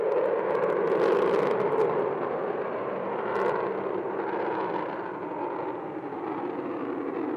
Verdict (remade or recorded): recorded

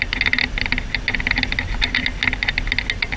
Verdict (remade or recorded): recorded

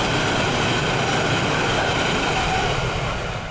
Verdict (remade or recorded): recorded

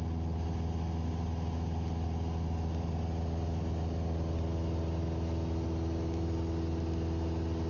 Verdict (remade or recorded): recorded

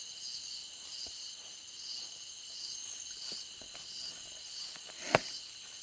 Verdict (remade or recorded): recorded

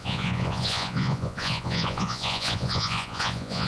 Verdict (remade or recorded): remade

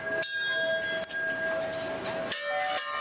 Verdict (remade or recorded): recorded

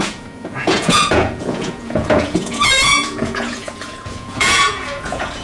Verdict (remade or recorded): remade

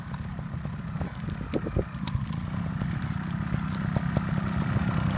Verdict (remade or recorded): recorded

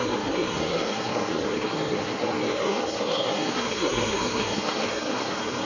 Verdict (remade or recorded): remade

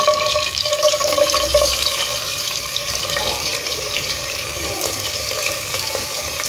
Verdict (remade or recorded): remade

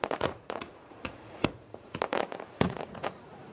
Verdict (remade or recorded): remade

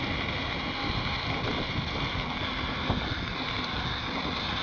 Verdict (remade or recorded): recorded